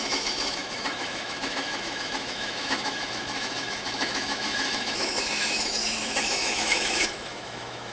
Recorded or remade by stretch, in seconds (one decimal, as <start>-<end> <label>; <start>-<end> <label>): 0.0-7.9 remade